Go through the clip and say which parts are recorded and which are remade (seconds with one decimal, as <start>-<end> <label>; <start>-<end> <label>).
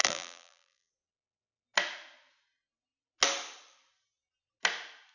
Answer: 0.0-0.9 remade; 0.9-5.1 recorded